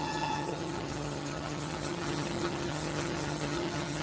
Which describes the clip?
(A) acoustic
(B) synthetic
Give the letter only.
B